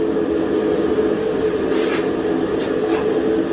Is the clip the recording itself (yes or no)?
yes